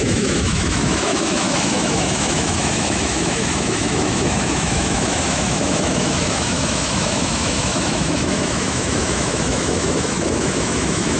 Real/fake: fake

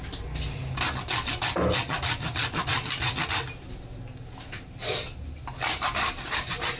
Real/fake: real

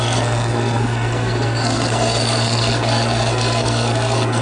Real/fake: fake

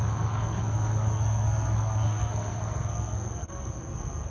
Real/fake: fake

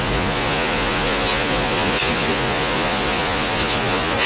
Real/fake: fake